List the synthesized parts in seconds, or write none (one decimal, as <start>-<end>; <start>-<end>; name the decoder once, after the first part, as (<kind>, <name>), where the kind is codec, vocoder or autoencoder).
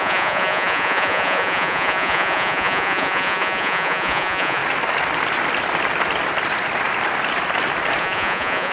0.0-4.6 (vocoder, Vocos); 8.0-8.7